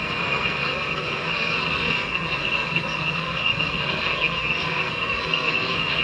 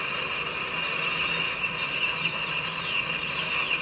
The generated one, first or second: first